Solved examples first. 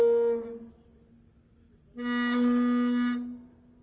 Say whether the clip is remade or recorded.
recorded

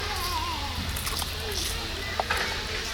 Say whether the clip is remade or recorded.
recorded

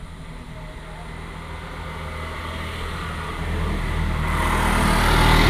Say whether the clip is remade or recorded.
recorded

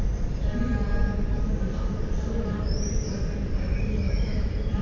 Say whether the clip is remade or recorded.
remade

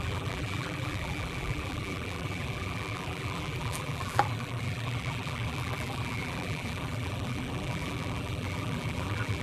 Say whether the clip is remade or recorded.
remade